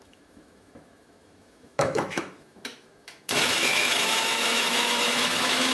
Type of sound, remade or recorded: remade